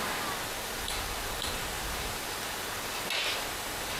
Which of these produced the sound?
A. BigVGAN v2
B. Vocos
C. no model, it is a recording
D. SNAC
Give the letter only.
C